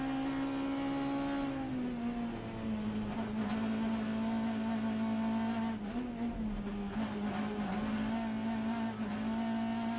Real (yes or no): yes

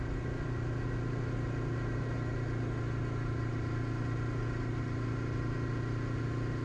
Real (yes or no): yes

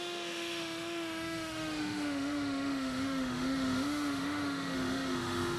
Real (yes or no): no